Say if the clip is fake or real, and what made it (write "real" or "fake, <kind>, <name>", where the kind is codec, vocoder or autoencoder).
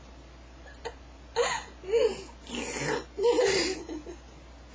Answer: real